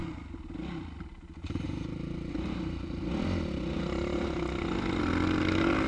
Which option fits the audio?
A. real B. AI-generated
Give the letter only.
A